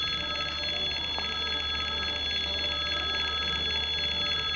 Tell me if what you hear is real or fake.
real